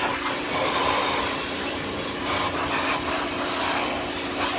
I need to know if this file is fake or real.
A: real